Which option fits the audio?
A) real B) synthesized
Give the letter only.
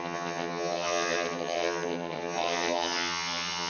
B